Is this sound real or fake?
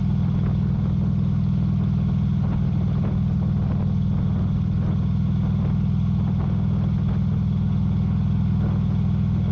real